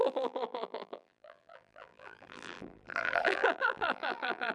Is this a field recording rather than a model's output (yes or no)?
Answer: no